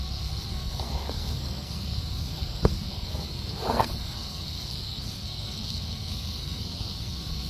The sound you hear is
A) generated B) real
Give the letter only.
A